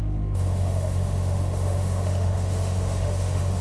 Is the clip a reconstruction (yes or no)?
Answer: yes